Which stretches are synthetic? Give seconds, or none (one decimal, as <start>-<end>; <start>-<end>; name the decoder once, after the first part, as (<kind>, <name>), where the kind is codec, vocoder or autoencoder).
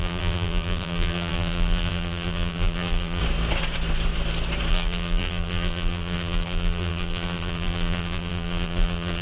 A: 0.0-3.2 (vocoder, BigVGAN v2); 4.7-9.2